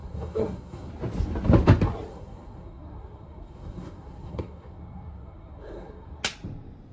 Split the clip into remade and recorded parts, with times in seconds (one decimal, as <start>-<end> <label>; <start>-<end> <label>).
0.0-0.9 remade; 0.9-2.1 recorded; 2.1-6.2 remade; 6.2-6.9 recorded